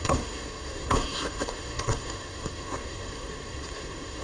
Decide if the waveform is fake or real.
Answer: fake